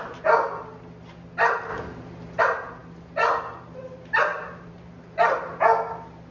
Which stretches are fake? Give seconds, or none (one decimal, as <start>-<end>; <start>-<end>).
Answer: 4.3-5.4